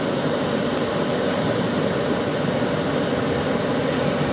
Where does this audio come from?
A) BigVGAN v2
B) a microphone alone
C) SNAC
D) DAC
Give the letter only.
B